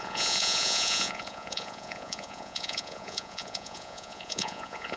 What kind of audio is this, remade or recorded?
remade